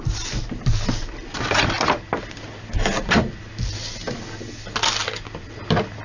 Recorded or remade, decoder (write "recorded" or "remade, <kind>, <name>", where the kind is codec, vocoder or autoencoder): recorded